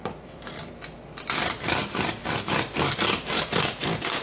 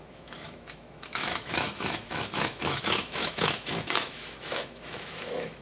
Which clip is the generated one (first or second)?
second